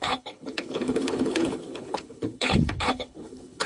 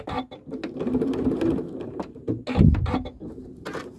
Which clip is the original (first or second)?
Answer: second